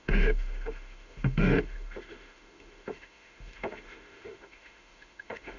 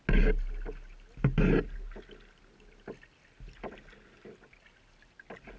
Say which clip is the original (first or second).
second